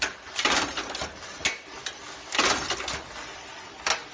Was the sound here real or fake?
real